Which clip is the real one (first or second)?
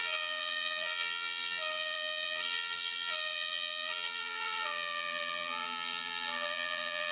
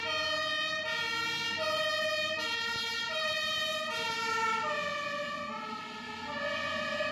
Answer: second